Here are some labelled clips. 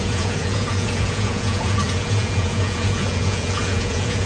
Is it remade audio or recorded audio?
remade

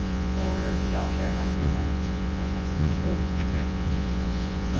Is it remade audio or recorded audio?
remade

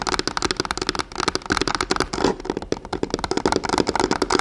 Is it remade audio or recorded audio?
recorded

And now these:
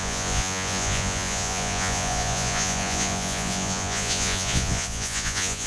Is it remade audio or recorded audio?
remade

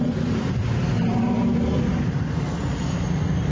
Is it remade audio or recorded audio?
recorded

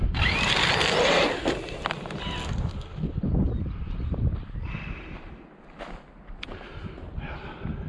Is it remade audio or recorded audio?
recorded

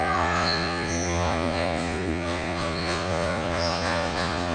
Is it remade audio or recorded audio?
remade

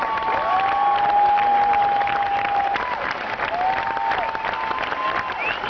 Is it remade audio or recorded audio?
recorded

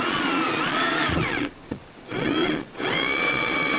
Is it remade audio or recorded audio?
remade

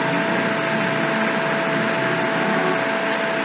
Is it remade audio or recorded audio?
recorded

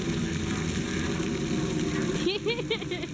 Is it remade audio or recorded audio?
recorded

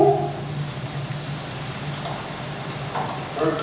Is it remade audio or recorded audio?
recorded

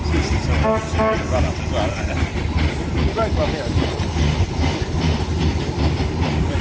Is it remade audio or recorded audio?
recorded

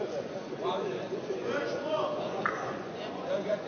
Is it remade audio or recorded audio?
remade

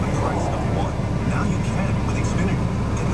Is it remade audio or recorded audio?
recorded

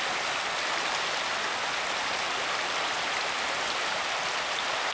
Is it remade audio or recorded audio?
recorded